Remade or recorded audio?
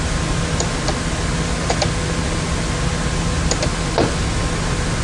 recorded